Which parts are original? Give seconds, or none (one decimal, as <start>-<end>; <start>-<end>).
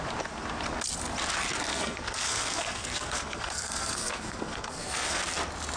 0.0-1.7; 5.2-5.8